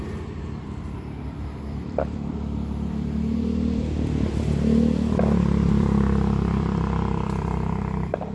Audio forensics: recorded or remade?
remade